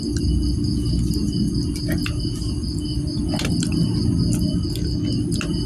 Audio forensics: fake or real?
real